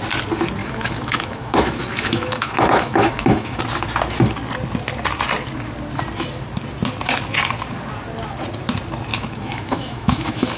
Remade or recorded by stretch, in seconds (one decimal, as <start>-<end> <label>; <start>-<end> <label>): 0.0-0.6 recorded; 0.6-3.6 remade; 3.6-9.1 recorded; 9.1-10.6 remade